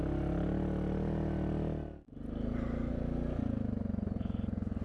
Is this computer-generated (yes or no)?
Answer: no